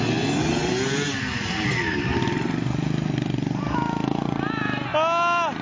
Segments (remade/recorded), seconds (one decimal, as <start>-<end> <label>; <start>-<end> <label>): 0.0-0.6 recorded; 0.6-2.0 remade; 2.0-5.6 recorded